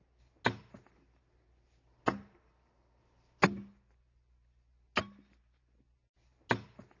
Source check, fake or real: real